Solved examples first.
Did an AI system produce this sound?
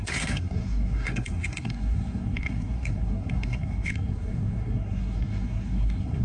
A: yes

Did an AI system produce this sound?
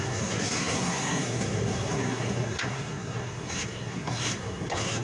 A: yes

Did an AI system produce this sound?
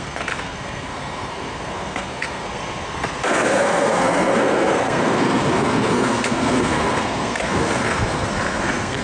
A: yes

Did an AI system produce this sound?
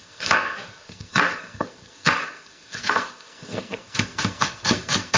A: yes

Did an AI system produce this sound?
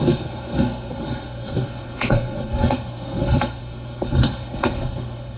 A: yes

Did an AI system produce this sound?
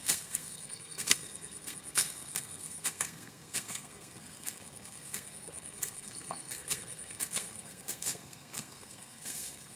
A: yes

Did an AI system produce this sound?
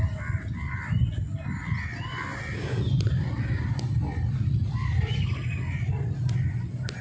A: no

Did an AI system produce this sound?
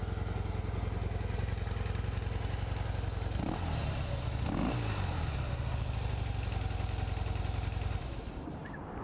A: no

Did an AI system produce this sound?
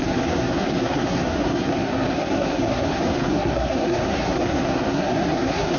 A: yes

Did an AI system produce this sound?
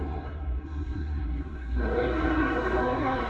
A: yes